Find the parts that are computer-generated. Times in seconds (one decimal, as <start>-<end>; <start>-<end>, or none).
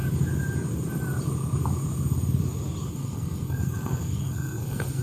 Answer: 2.9-5.0